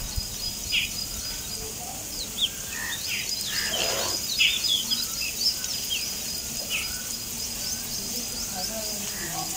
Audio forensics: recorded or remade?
recorded